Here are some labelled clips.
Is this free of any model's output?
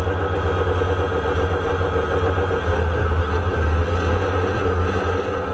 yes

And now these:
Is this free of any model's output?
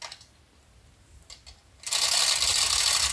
yes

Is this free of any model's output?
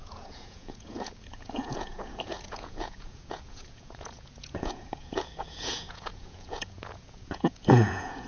no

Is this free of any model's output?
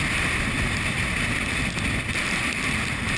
yes